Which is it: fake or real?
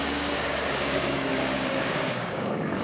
fake